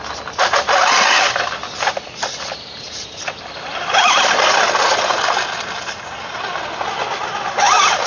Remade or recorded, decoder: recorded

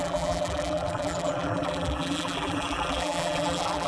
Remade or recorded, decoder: remade, vocoder, BigVGAN v2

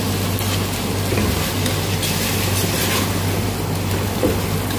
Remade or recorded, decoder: recorded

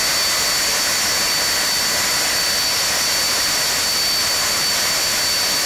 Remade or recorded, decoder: recorded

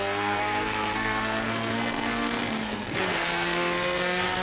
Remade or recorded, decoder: remade, codec, SNAC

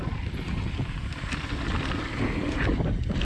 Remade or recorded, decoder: recorded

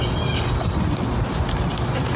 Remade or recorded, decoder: recorded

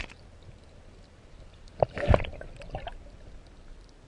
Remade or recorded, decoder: remade, vocoder, BigVGAN v2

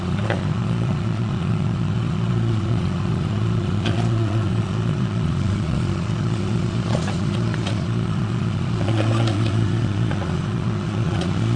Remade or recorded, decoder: remade, vocoder, Vocos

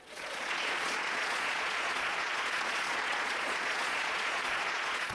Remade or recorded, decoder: remade, vocoder, Vocos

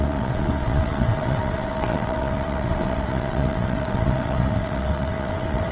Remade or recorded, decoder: remade, vocoder, WaveNeXt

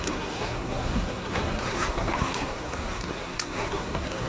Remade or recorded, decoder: remade, codec, SNAC